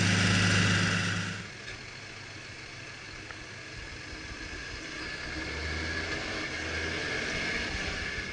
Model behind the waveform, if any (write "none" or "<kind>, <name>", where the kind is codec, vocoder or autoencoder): none